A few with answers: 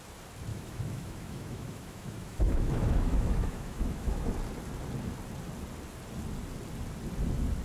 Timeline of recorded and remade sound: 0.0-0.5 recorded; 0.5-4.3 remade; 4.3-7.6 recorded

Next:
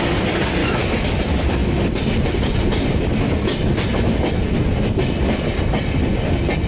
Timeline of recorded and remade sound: 0.0-0.6 recorded; 0.6-1.2 remade; 1.2-6.7 recorded

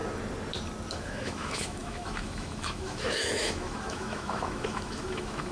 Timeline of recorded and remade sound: 0.0-0.9 recorded; 0.9-5.5 remade

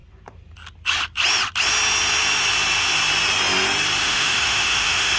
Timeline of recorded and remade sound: 0.0-4.0 recorded; 4.0-5.2 remade